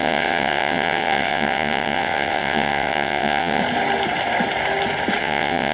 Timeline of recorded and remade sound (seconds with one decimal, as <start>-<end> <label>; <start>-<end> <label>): 0.0-3.6 remade; 3.6-5.2 recorded; 5.2-5.7 remade